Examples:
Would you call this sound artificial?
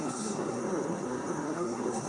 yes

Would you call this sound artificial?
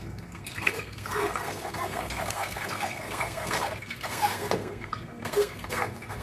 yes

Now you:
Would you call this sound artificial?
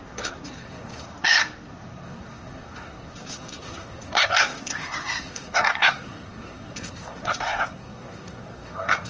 yes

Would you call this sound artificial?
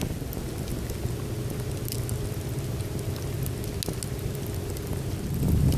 no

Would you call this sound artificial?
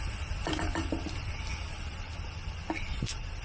no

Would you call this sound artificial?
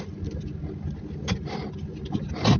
no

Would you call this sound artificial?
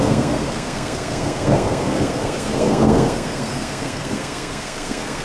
yes